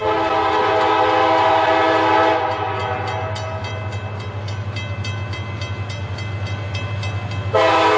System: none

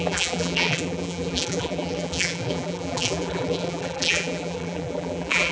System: vocoder, BigVGAN v2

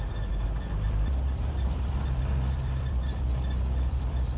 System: vocoder, BigVGAN v2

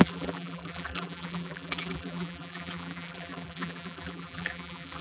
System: vocoder, BigVGAN v2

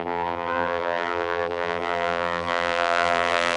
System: vocoder, BigVGAN v2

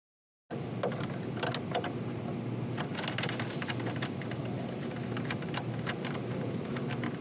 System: none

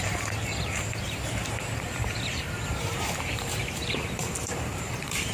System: vocoder, BigVGAN v2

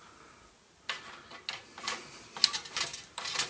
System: none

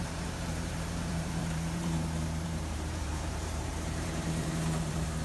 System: vocoder, BigVGAN v2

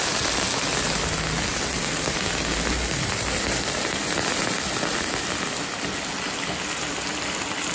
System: none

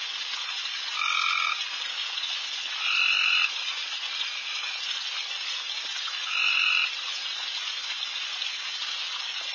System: none